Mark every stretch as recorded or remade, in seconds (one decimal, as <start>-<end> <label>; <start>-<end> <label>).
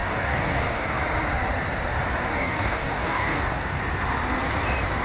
0.0-1.0 remade; 1.0-2.3 recorded; 2.3-3.8 remade; 3.8-5.0 recorded